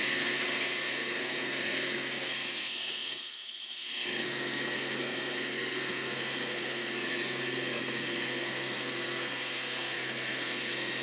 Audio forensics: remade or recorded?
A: remade